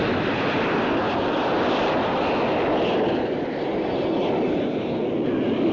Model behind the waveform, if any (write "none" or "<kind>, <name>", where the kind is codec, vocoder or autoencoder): none